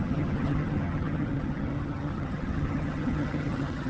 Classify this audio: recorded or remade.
remade